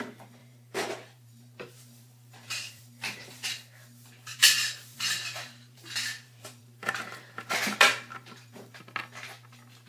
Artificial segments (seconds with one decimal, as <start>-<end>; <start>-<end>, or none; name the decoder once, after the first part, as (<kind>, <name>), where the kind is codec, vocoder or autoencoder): 0.4-3.5 (vocoder, BigVGAN v2); 4.3-8.8